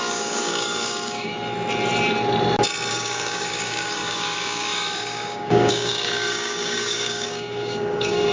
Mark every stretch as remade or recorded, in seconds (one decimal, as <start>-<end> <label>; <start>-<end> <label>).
0.0-1.3 remade; 1.3-2.9 recorded; 2.9-8.3 remade